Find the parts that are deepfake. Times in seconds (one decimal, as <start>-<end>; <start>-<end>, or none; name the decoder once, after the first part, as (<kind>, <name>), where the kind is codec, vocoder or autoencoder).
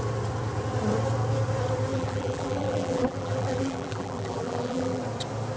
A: 1.9-5.0 (vocoder, BigVGAN v2)